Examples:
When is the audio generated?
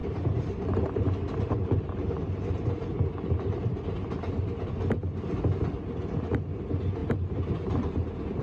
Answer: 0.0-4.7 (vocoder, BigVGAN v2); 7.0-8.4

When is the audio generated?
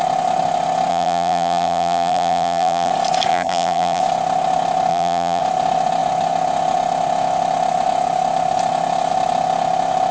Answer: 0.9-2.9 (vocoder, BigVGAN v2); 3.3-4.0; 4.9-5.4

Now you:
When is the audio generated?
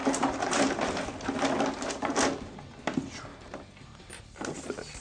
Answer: 0.0-1.0 (vocoder, BigVGAN v2); 3.3-4.2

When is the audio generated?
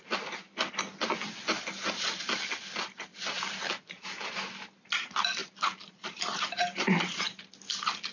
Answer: 3.1-4.3 (vocoder, BigVGAN v2); 5.4-7.4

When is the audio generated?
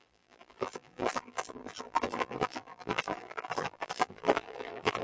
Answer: 0.0-5.0 (vocoder, BigVGAN v2)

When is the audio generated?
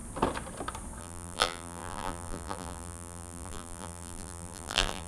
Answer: 1.0-5.1 (vocoder, BigVGAN v2)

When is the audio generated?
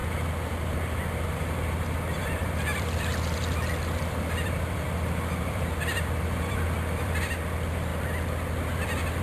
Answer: 1.3-9.2 (vocoder, BigVGAN v2)